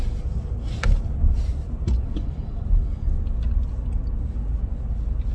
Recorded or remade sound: recorded